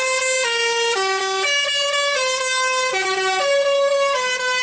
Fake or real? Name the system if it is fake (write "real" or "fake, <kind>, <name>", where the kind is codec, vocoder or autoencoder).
real